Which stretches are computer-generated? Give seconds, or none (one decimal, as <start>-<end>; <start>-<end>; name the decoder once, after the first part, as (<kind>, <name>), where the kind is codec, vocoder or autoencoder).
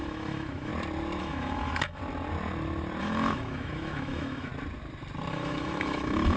0.0-0.7 (autoencoder, DAC-VAE); 1.2-2.0; 3.0-4.5; 5.3-6.4